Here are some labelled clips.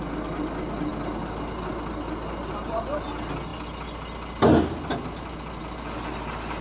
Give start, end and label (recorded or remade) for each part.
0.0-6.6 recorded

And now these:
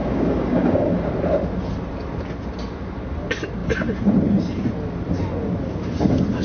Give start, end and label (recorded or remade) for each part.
0.0-1.1 remade; 1.1-6.4 recorded

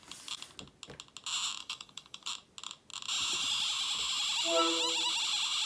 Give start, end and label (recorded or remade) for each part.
0.0-1.6 recorded; 1.6-2.3 remade; 2.3-5.7 recorded

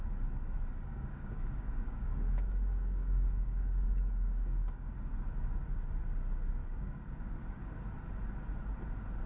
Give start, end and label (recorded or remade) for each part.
0.0-0.9 recorded; 0.9-4.9 remade; 4.9-6.6 recorded; 6.6-7.6 remade; 7.6-9.3 recorded

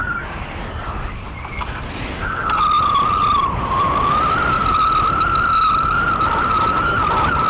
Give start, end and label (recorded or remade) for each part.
0.0-7.5 recorded

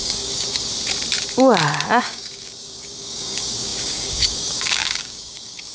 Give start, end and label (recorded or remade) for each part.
0.0-0.7 remade; 0.7-2.0 recorded; 2.0-5.7 remade

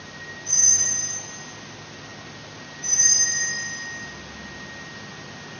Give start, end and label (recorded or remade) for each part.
0.0-5.6 recorded

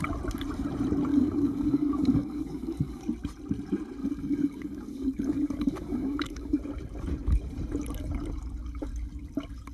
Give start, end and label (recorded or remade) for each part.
0.0-1.1 recorded; 1.1-3.0 remade; 3.0-4.0 recorded; 4.0-6.6 remade; 6.6-9.7 recorded